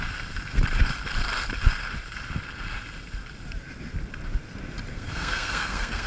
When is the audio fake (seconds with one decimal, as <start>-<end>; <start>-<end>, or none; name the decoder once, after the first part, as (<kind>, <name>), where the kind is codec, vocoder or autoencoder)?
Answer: 4.9-6.1 (codec, SNAC)